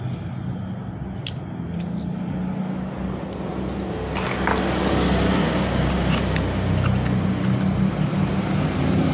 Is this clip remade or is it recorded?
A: recorded